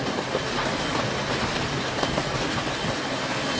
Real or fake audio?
real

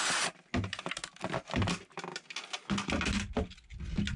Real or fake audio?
real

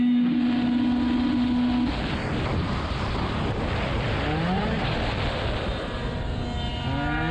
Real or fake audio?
real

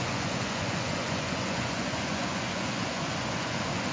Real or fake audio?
fake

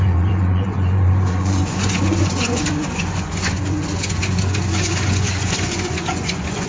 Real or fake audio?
fake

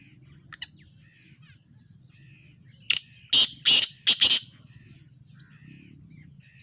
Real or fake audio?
real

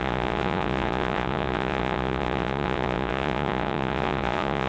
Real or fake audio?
fake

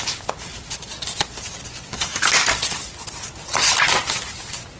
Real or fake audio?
real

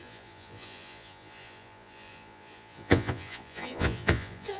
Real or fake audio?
fake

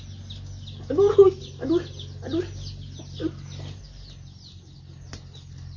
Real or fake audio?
real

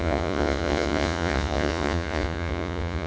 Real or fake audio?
fake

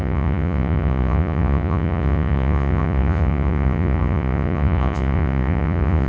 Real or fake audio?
fake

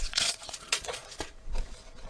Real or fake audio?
fake